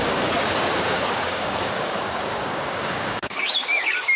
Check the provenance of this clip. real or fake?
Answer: fake